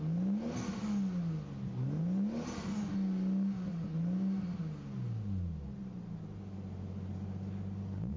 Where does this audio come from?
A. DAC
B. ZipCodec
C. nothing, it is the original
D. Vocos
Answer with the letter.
C